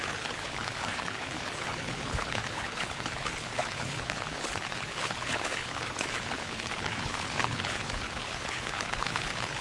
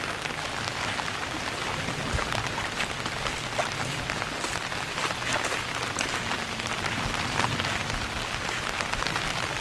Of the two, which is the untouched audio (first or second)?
second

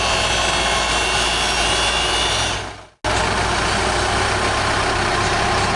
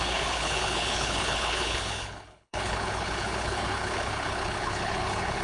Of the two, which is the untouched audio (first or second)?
first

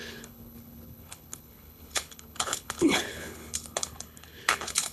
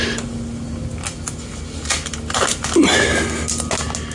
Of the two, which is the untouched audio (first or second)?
second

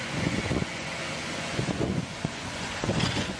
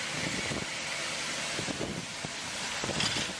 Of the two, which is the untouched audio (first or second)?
second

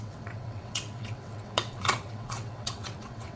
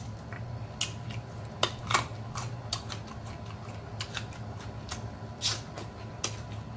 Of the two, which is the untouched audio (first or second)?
second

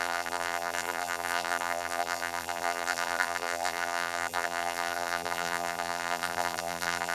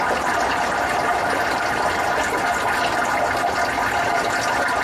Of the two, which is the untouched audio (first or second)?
second